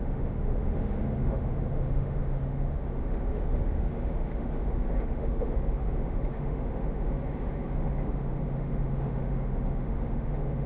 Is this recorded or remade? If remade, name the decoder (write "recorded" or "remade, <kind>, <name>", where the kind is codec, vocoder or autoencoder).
remade, autoencoder, DAC-VAE